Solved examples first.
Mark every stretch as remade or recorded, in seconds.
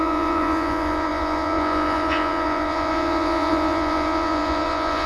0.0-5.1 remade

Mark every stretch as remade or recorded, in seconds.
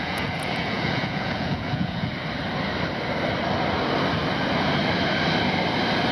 0.0-2.1 remade; 2.1-6.1 recorded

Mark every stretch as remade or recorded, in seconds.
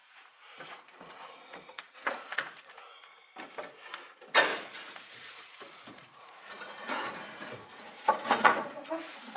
0.0-2.7 remade; 2.7-4.5 recorded; 4.5-9.4 remade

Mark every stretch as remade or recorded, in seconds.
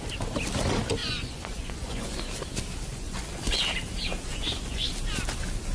0.0-1.0 recorded; 1.0-2.2 remade; 2.2-2.9 recorded; 2.9-3.5 remade; 3.5-4.3 recorded; 4.3-4.9 remade; 4.9-5.7 recorded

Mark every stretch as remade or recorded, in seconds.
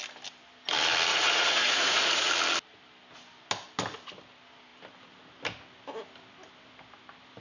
0.0-1.1 recorded; 1.1-2.3 remade; 2.3-7.4 recorded